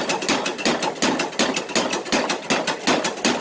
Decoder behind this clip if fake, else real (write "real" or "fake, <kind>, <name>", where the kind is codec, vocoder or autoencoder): real